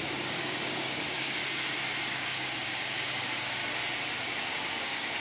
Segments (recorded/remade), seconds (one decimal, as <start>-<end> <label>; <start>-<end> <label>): 0.0-1.4 remade; 1.4-2.0 recorded; 2.0-3.6 remade; 3.6-4.5 recorded; 4.5-5.2 remade